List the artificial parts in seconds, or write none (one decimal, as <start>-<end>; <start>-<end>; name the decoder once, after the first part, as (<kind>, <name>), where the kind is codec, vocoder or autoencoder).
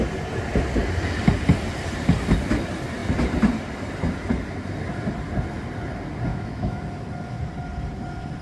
6.3-6.8 (autoencoder, DAC-VAE)